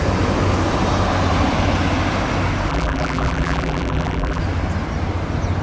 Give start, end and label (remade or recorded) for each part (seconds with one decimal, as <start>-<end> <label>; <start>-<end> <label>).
0.0-2.7 recorded; 2.7-4.4 remade; 4.4-5.6 recorded